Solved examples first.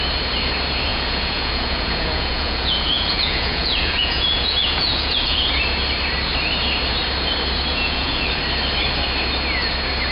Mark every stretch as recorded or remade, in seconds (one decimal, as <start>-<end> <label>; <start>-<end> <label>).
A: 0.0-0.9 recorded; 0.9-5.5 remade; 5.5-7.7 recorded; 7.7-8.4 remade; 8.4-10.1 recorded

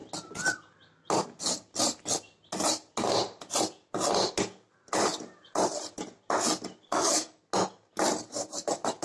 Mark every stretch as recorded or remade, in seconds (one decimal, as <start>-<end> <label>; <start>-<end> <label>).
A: 0.0-6.9 recorded; 6.9-7.4 remade; 7.4-9.0 recorded

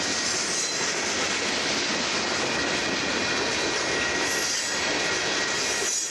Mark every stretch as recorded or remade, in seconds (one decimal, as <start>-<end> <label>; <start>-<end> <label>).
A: 0.0-4.4 recorded; 4.4-5.3 remade; 5.3-6.1 recorded

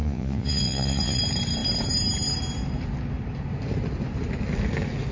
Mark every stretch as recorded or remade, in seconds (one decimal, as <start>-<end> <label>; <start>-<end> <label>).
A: 0.0-1.2 remade; 1.2-5.1 recorded

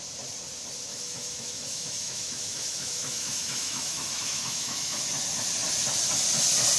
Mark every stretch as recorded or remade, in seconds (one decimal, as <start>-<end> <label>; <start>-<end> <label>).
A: 0.0-0.9 recorded; 0.9-5.0 remade; 5.0-6.8 recorded

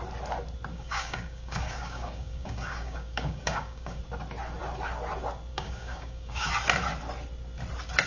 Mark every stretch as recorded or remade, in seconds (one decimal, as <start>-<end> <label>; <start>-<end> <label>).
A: 0.0-0.7 recorded; 0.7-4.0 remade; 4.0-5.5 recorded; 5.5-6.5 remade; 6.5-8.1 recorded